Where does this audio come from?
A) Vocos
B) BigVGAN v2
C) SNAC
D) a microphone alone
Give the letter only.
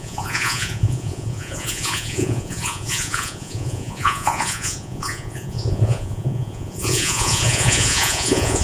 A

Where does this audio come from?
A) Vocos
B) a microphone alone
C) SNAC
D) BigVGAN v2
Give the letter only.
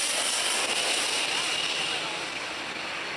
B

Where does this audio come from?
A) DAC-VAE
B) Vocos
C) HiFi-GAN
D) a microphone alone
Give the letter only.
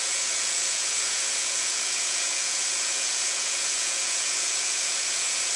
B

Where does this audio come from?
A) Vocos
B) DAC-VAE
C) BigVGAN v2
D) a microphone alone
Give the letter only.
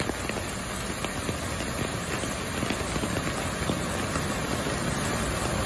D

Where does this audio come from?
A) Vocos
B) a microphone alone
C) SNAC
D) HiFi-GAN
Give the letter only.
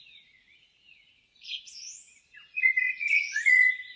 A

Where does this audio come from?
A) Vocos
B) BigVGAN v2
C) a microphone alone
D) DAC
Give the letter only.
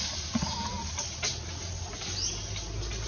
C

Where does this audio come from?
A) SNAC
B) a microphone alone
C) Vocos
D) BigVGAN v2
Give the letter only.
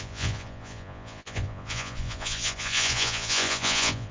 C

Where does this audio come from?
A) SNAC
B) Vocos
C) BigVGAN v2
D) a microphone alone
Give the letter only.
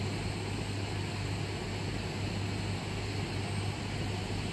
D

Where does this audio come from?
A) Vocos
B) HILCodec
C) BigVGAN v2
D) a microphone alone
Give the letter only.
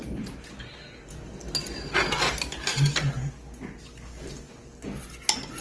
D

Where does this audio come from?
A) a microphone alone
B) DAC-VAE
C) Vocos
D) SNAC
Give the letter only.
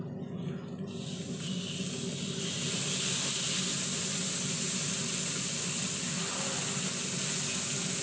A